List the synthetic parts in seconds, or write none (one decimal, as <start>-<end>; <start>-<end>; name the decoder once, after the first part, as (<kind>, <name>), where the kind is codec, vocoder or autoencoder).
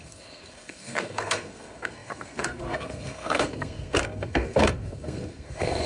0.0-5.9 (codec, SNAC)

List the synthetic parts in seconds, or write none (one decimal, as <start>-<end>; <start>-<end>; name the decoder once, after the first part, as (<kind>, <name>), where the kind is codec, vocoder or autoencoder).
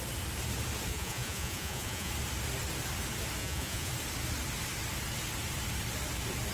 0.9-2.1 (vocoder, Vocos); 3.4-3.9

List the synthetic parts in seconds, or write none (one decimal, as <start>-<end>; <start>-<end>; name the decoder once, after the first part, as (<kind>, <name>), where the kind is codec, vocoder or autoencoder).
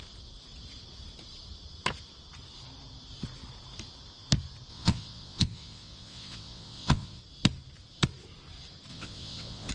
4.7-7.2 (vocoder, WaveNeXt); 8.9-9.7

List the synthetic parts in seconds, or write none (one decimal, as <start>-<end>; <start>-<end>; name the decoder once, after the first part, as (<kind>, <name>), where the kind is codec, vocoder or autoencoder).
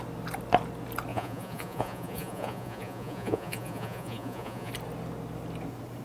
1.1-4.7 (vocoder, Vocos)